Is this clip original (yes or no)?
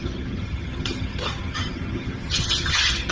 no